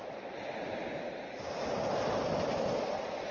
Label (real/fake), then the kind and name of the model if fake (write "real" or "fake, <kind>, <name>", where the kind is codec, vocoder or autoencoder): real